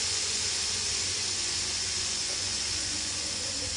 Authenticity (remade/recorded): remade